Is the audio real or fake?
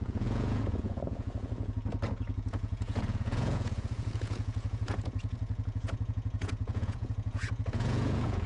fake